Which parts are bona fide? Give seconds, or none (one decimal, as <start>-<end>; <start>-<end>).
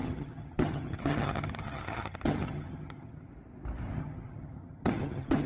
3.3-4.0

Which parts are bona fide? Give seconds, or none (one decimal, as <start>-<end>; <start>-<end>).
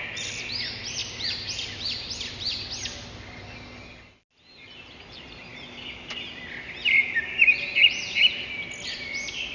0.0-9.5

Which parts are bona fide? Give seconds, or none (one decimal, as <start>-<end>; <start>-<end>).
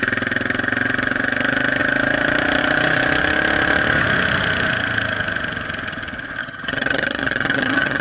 0.0-6.4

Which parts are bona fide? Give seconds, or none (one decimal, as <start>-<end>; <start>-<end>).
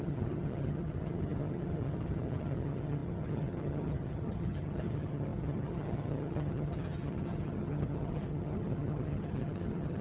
none